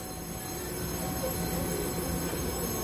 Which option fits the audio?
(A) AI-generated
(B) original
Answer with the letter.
B